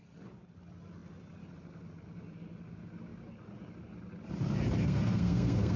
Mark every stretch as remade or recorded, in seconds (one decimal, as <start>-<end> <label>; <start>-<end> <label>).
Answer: 0.0-4.8 recorded; 4.8-5.8 remade